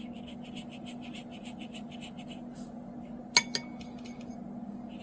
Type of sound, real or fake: real